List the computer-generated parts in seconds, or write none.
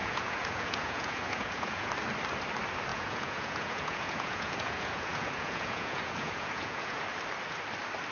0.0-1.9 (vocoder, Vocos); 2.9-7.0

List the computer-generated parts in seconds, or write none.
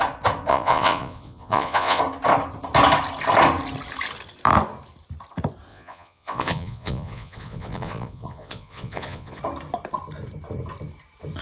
0.5-2.0 (vocoder, Vocos); 5.7-9.4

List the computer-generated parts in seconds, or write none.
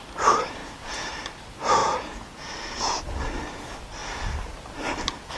0.6-1.1 (vocoder, Vocos); 1.8-3.0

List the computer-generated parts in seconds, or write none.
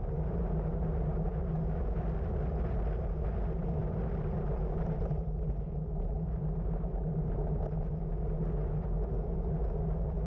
none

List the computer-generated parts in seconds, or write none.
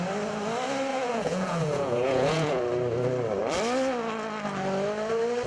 0.9-2.6 (vocoder, Vocos)